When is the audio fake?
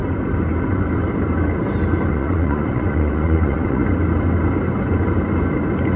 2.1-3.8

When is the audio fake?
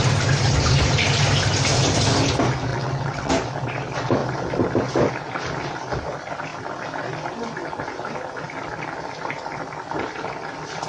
2.7-3.3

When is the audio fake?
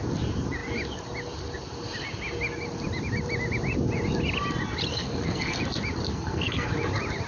4.9-5.6; 6.1-6.7